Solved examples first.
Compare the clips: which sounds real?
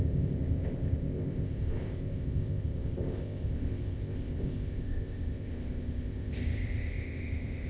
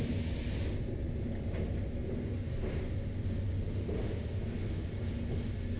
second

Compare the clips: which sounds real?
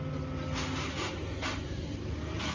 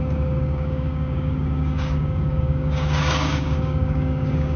first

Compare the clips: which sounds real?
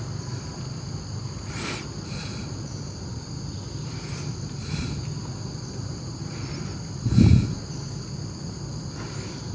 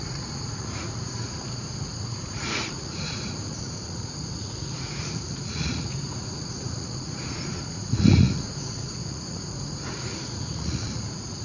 first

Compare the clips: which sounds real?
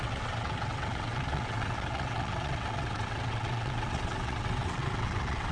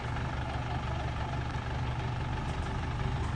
second